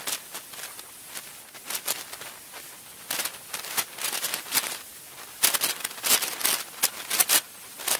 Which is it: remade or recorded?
recorded